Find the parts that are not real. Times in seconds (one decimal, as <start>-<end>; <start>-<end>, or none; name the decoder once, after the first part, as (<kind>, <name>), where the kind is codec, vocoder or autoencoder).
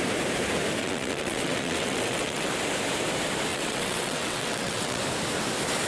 0.8-2.5 (vocoder, WaveNeXt); 3.5-5.0